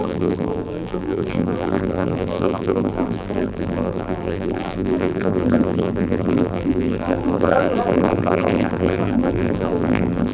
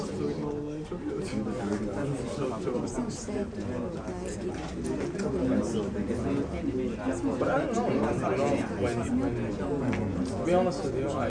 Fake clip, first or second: first